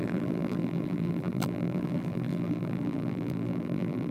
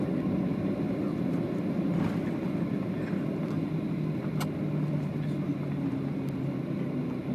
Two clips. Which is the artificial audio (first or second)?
first